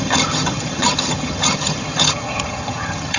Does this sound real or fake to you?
fake